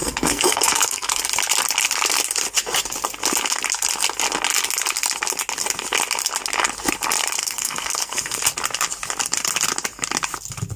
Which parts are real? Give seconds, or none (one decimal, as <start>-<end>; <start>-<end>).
1.1-7.4; 8.4-10.8